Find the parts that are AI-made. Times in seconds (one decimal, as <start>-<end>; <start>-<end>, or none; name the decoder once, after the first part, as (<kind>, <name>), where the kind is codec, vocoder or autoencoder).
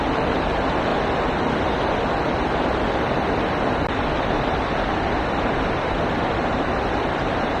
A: 0.0-0.9 (vocoder, BigVGAN v2); 5.3-7.6